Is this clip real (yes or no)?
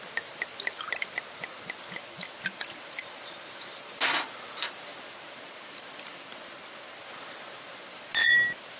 yes